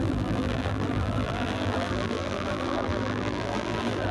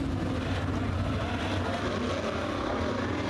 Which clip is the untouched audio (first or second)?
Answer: second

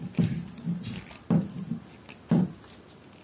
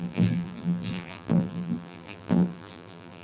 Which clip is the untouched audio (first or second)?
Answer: first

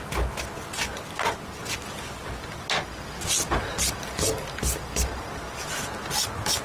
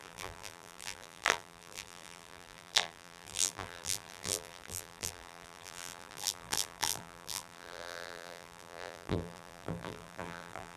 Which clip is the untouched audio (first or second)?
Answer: first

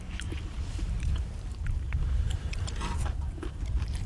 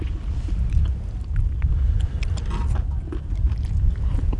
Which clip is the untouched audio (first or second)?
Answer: second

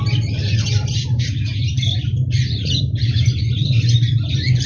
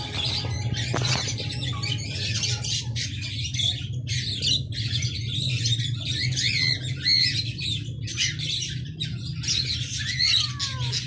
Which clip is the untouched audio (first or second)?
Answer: second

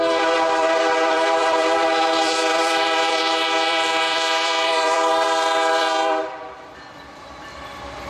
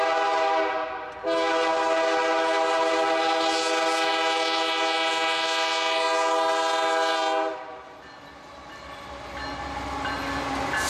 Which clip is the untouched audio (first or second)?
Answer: second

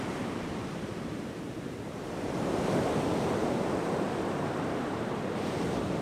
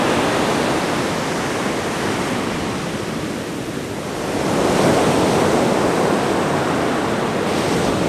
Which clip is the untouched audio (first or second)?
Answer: second